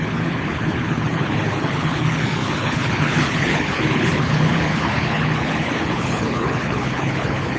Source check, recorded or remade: remade